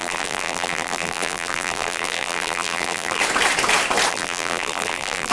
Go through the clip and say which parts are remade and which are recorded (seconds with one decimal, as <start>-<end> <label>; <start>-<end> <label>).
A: 0.0-3.2 remade; 3.2-4.1 recorded; 4.1-5.3 remade